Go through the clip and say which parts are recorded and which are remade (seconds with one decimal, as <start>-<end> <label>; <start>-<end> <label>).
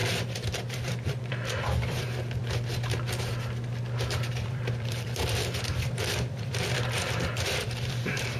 0.0-2.4 remade; 2.4-4.2 recorded; 4.2-8.4 remade